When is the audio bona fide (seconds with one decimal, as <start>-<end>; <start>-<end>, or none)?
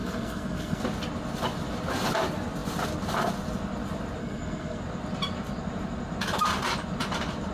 0.8-4.2; 4.8-7.5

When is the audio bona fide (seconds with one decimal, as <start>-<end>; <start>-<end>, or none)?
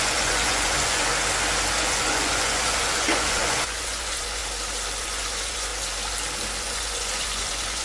1.1-1.8; 4.4-5.0; 5.7-6.6